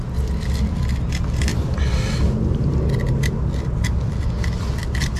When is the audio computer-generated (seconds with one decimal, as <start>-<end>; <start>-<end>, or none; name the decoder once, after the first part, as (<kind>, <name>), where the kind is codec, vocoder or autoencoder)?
none